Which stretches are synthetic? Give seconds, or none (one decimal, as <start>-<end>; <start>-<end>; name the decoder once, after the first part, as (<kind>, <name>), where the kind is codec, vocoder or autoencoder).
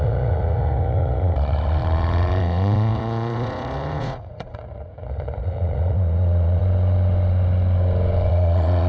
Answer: 0.0-1.8 (vocoder, Vocos); 2.4-6.6; 8.3-8.9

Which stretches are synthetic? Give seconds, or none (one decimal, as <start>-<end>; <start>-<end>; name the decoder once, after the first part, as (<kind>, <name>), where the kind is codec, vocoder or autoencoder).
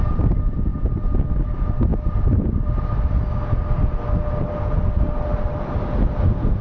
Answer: none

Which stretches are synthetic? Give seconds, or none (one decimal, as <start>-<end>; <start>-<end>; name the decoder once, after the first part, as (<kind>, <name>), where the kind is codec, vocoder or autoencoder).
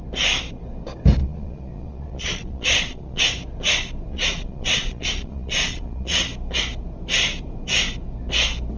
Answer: 1.2-3.2 (vocoder, Vocos); 4.1-6.2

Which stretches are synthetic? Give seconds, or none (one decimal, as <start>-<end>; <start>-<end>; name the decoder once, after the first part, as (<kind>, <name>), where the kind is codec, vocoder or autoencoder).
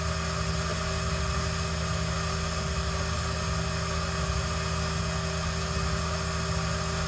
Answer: none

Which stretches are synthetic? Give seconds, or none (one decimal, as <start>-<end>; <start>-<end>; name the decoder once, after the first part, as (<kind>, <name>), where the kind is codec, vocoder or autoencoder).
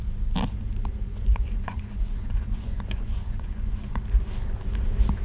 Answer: 0.9-4.0 (vocoder, Vocos)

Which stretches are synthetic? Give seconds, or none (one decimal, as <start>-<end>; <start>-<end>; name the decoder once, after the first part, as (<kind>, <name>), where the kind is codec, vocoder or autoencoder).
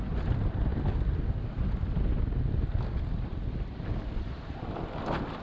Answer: none